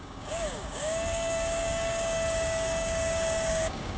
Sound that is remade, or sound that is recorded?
remade